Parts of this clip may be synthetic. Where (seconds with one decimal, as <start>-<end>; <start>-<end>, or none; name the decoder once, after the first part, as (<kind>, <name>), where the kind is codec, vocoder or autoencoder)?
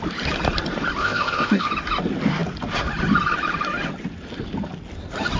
1.0-1.7 (codec, ZipCodec)